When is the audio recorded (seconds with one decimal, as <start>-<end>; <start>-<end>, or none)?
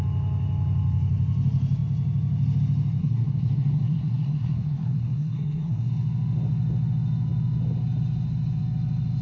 0.0-3.0; 5.9-9.2